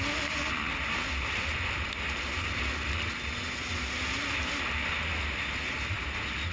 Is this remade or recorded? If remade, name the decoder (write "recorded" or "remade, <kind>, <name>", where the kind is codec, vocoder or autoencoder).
recorded